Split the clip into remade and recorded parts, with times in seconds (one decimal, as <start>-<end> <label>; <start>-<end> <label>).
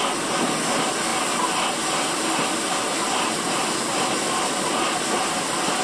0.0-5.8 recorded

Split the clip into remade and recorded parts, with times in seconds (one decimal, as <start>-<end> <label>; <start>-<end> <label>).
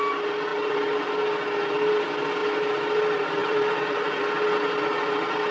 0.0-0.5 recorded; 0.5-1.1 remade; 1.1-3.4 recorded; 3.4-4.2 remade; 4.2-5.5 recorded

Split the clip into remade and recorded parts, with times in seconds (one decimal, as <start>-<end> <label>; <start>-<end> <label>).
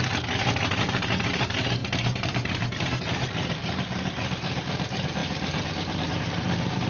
0.0-6.9 remade